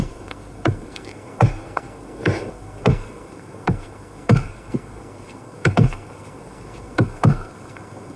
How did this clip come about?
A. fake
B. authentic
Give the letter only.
A